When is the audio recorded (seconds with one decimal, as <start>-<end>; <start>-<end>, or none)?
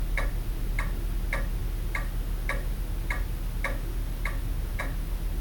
0.0-5.4